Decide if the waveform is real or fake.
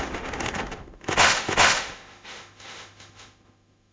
fake